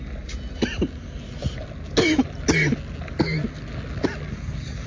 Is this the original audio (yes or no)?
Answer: yes